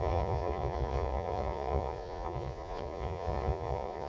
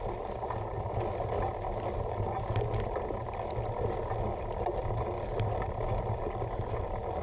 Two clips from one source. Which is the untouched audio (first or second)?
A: second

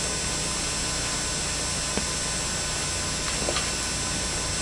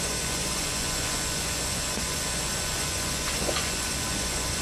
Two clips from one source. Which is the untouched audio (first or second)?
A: first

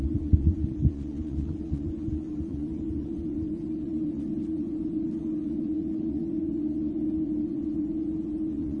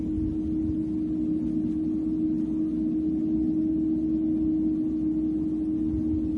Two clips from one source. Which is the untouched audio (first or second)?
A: second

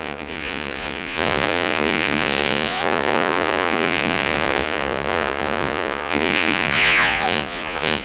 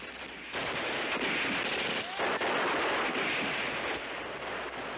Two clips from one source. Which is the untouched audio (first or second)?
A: second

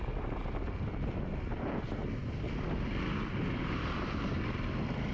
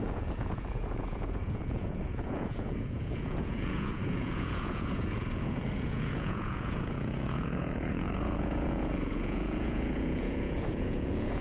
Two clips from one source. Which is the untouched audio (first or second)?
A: first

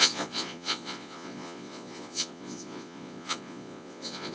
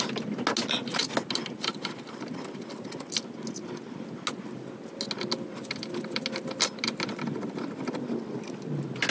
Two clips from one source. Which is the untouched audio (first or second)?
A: second